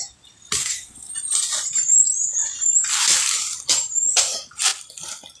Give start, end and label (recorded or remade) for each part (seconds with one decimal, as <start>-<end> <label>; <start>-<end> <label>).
0.0-0.6 recorded; 0.6-1.1 remade; 1.1-5.4 recorded